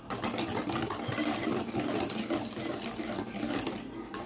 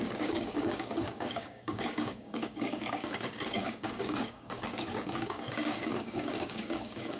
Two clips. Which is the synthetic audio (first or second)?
second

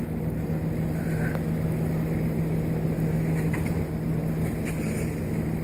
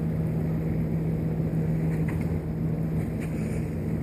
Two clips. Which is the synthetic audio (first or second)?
first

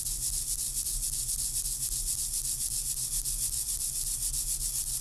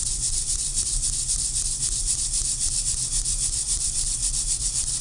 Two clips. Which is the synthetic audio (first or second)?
second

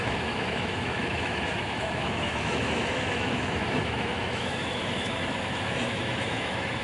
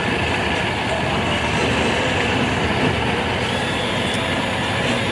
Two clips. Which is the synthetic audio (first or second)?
first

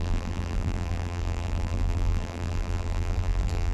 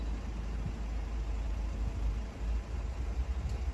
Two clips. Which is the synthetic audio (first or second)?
first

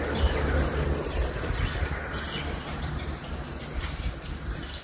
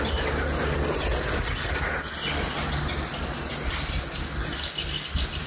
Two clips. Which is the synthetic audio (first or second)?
first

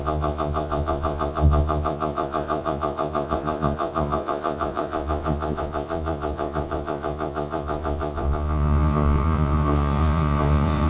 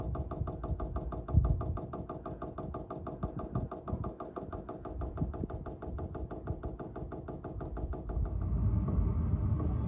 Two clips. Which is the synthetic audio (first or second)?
first